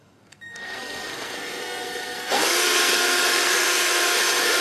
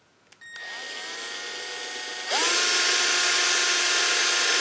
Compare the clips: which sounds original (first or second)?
second